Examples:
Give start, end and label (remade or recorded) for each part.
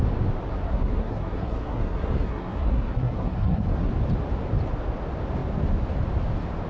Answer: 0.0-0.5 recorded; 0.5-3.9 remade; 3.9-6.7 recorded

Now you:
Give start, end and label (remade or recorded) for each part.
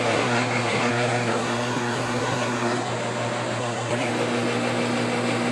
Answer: 0.0-2.9 remade; 2.9-3.6 recorded; 3.6-4.1 remade; 4.1-5.5 recorded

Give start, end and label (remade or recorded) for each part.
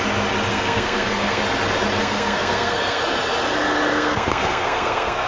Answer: 0.0-0.5 recorded; 0.5-1.4 remade; 1.4-2.0 recorded; 2.0-3.0 remade; 3.0-3.9 recorded; 3.9-5.3 remade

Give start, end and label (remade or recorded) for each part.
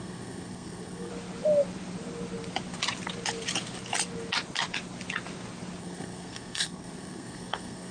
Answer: 0.0-1.1 remade; 1.1-5.8 recorded; 5.8-7.9 remade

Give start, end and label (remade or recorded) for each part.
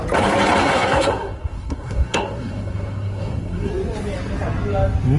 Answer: 0.0-0.6 recorded; 0.6-3.7 remade; 3.7-5.2 recorded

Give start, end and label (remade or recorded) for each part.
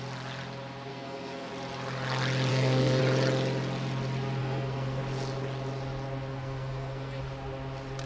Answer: 0.0-0.9 recorded; 0.9-1.5 remade; 1.5-2.5 recorded; 2.5-3.0 remade; 3.0-4.4 recorded; 4.4-5.0 remade; 5.0-6.3 recorded; 6.3-7.2 remade; 7.2-8.1 recorded